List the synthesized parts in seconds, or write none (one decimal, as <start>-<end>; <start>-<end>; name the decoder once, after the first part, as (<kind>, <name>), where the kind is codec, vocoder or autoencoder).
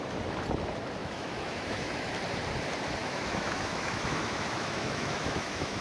1.0-2.1 (autoencoder, DAC-VAE); 3.0-5.8